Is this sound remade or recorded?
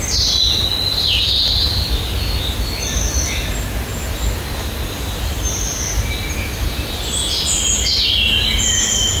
recorded